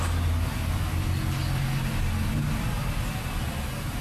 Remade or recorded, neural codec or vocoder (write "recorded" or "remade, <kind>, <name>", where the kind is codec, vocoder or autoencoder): recorded